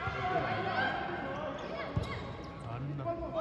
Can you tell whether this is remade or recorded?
recorded